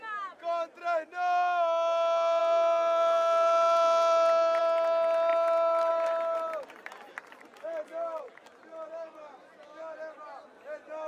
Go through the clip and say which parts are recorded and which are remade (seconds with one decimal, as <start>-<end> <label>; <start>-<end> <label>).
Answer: 0.0-11.1 recorded